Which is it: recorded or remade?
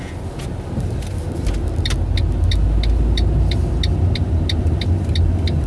recorded